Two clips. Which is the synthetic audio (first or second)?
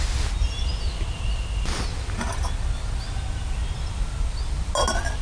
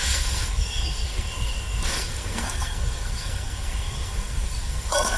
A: second